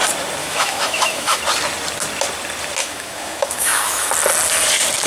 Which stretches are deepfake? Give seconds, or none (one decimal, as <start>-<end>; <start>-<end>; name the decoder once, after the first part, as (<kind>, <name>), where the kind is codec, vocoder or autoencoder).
0.4-1.4 (autoencoder, DAC-VAE); 2.8-4.1